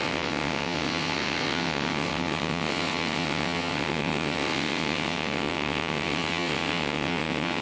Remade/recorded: remade